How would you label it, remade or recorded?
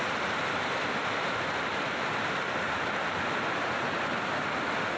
recorded